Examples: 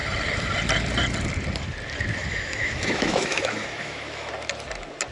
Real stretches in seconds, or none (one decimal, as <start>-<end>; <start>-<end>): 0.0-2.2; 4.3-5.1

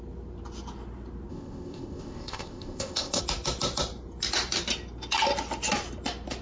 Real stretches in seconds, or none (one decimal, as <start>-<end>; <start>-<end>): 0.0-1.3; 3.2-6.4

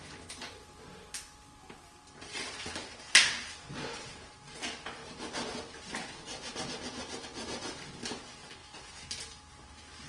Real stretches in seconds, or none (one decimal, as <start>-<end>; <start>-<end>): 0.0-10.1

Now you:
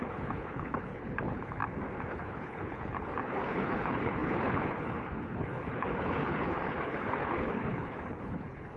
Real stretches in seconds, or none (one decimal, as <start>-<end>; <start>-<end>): 1.6-2.1